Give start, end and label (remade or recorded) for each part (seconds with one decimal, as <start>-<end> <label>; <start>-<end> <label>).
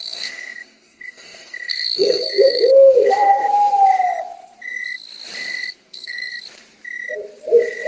0.0-3.4 remade; 3.4-5.7 recorded; 5.7-6.3 remade; 6.3-7.9 recorded